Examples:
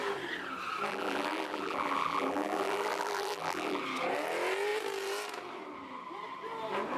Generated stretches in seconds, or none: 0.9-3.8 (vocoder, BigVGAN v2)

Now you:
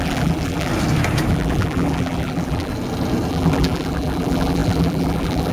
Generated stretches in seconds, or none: 0.0-0.7 (vocoder, BigVGAN v2); 1.3-2.7; 3.3-5.5

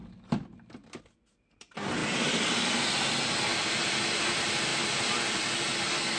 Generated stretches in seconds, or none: 0.0-3.5 (vocoder, BigVGAN v2); 4.3-4.7